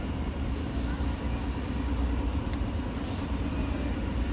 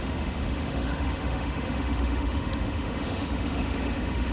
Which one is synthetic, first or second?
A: second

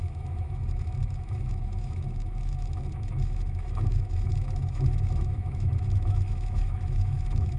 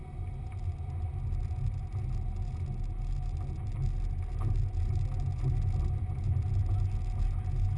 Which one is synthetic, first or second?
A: first